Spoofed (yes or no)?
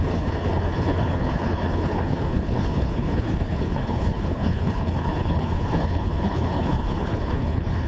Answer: yes